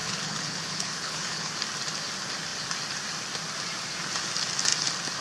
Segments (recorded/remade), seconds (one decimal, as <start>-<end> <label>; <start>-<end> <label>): 0.0-1.5 remade; 1.5-5.2 recorded